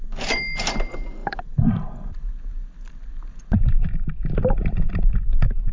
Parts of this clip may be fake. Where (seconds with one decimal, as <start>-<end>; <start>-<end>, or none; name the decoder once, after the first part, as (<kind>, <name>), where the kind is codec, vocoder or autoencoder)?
1.2-4.3 (vocoder, BigVGAN v2)